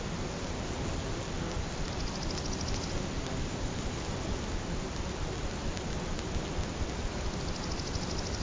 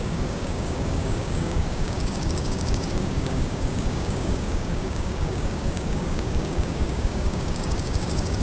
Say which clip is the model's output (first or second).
second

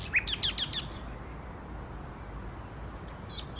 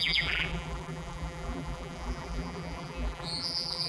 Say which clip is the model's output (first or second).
second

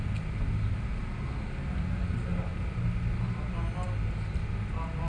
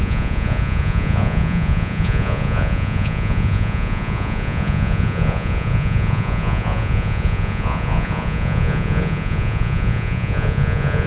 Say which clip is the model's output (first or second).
second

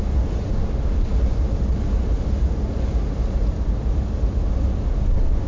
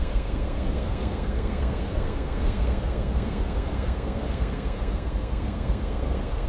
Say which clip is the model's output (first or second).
second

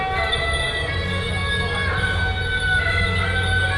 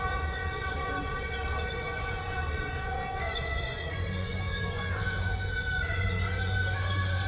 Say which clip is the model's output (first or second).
second